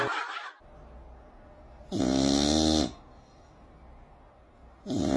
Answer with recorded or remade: recorded